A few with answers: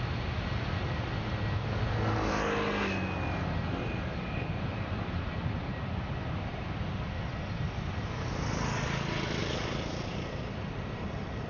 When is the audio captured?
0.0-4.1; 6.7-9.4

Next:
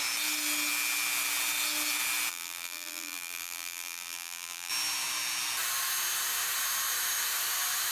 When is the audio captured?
0.0-2.3; 4.7-7.9

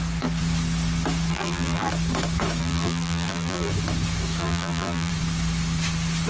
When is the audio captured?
0.0-1.3; 1.9-2.6; 3.7-4.4; 5.1-6.3

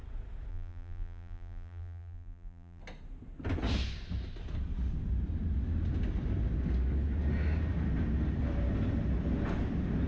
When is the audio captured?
0.0-0.5; 2.8-10.1

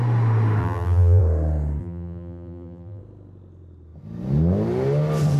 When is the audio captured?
0.0-0.6; 1.2-1.8; 3.0-5.4